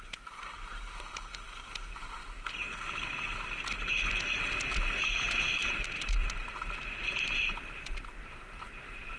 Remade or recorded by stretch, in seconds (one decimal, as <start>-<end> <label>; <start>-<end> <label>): 0.0-2.2 remade; 2.2-5.0 recorded; 5.0-6.4 remade; 6.4-7.0 recorded; 7.0-9.2 remade